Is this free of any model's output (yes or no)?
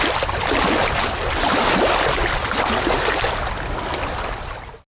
yes